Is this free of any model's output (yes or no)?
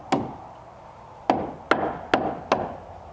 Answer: yes